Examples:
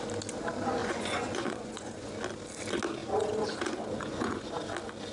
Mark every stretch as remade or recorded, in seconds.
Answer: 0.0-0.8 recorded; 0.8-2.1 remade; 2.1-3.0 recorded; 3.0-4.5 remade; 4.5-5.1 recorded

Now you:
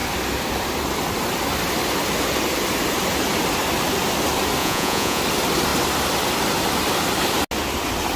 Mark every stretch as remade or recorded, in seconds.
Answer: 0.0-4.6 recorded; 4.6-5.2 remade; 5.2-8.2 recorded

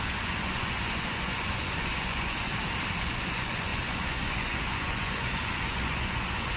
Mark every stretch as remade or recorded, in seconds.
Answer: 0.0-2.5 remade; 2.5-3.0 recorded; 3.0-6.6 remade